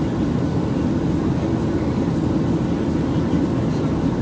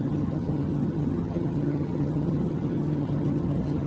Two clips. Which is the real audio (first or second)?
first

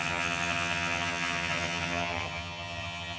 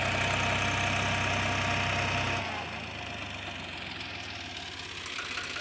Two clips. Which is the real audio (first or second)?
second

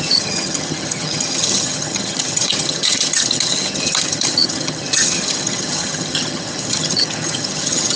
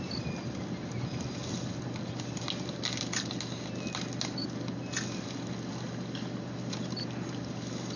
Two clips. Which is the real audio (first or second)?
second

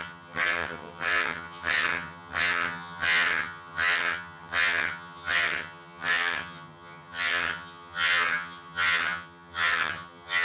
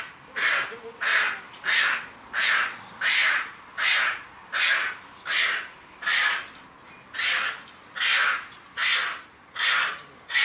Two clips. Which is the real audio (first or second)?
second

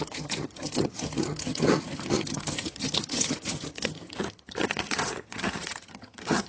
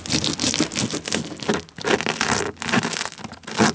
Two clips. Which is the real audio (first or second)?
second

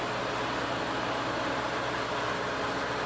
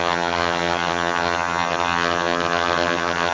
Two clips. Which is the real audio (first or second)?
first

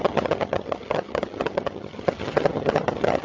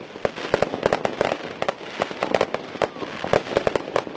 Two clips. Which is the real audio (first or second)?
second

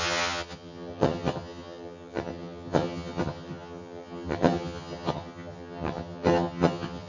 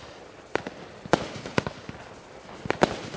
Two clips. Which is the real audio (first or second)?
second